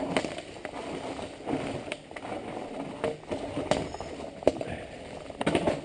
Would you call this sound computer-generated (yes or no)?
no